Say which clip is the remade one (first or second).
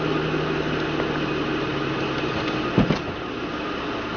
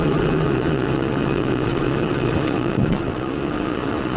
second